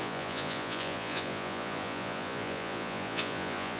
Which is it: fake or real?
fake